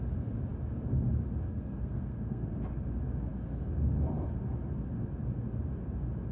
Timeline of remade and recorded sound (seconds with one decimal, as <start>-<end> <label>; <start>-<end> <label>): 0.0-1.5 recorded; 1.5-2.5 remade; 2.5-6.3 recorded